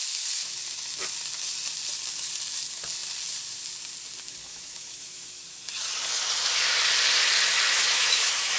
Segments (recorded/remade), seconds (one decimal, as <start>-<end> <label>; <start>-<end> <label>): 0.0-4.4 recorded; 4.4-5.4 remade; 5.4-7.7 recorded; 7.7-8.6 remade